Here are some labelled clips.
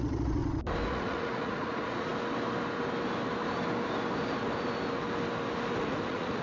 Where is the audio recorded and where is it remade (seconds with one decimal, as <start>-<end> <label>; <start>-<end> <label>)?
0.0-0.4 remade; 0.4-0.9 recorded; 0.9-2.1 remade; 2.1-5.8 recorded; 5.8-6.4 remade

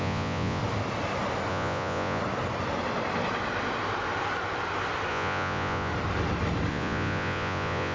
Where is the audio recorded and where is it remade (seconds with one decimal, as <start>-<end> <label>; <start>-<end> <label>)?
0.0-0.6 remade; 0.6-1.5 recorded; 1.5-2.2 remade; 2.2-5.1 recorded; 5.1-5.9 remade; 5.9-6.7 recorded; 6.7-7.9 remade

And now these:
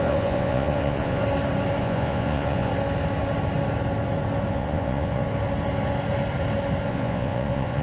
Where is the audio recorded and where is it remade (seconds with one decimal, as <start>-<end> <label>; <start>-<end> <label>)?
0.0-1.2 remade; 1.2-1.8 recorded; 1.8-2.7 remade; 2.7-4.5 recorded; 4.5-5.2 remade; 5.2-6.9 recorded; 6.9-7.8 remade

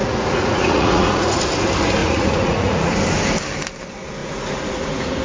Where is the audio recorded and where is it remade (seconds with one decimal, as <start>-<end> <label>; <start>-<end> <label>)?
0.0-1.4 remade; 1.4-2.0 recorded; 2.0-2.9 remade; 2.9-4.2 recorded; 4.2-5.2 remade

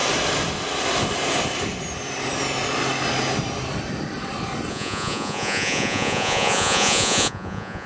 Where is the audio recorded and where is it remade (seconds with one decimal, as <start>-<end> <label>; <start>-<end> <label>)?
0.0-4.7 recorded; 4.7-7.9 remade

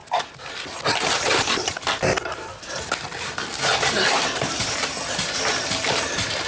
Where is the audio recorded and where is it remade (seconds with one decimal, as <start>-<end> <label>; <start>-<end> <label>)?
0.0-6.5 recorded

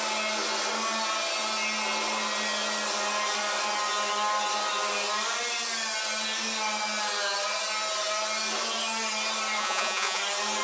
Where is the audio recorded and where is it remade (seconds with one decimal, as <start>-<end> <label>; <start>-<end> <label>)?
0.0-9.6 recorded; 9.6-10.2 remade; 10.2-10.6 recorded

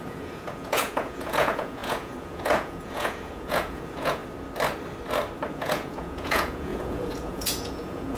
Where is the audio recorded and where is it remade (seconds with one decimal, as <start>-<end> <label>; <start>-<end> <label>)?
0.0-4.2 remade; 4.2-5.5 recorded; 5.5-8.2 remade